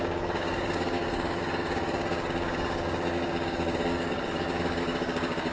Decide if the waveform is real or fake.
fake